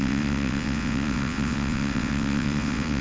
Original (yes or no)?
no